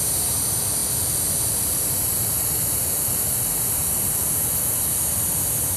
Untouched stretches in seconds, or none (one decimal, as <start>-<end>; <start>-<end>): 0.0-0.8; 4.3-5.8